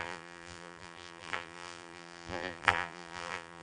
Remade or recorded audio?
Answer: remade